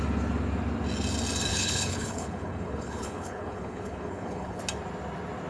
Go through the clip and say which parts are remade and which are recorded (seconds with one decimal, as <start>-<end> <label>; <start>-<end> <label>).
0.0-1.5 recorded; 1.5-4.6 remade; 4.6-5.5 recorded